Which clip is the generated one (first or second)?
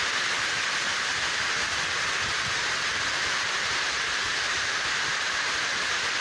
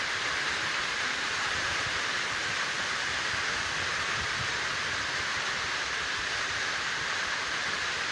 second